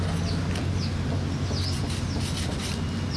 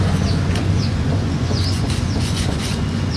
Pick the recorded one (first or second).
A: first